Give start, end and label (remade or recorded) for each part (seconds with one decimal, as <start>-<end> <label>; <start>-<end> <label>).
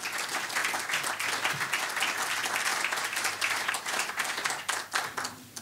0.0-2.7 recorded; 2.7-4.6 remade; 4.6-5.6 recorded